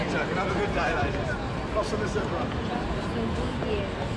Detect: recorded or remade recorded